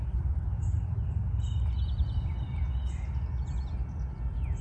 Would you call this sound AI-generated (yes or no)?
no